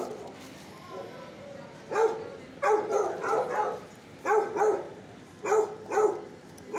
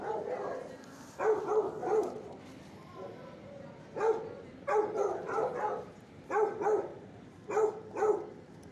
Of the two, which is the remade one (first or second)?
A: second